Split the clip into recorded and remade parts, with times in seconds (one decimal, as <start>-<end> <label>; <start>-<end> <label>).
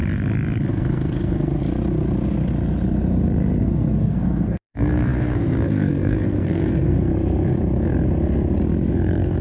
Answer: 0.0-0.7 recorded; 0.7-1.6 remade; 1.6-3.6 recorded; 3.6-7.1 remade; 7.1-8.9 recorded; 8.9-9.4 remade